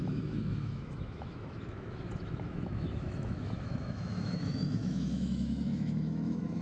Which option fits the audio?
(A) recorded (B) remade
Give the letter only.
B